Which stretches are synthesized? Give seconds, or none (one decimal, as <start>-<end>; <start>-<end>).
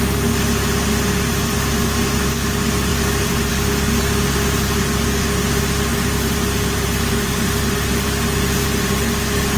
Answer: 5.9-7.9